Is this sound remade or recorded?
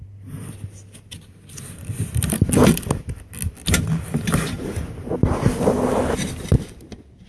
recorded